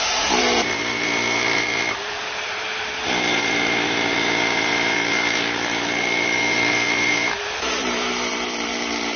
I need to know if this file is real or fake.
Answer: fake